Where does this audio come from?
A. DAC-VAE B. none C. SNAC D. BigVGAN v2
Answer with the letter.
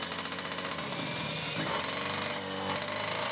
B